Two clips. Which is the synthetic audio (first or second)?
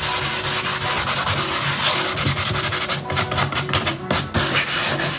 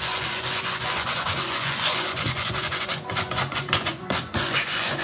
second